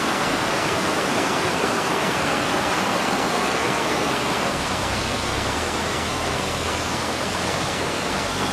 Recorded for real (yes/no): no